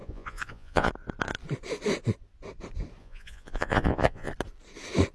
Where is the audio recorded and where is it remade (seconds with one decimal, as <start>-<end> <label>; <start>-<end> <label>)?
0.0-0.9 remade; 0.9-3.0 recorded; 3.0-4.3 remade; 4.3-5.1 recorded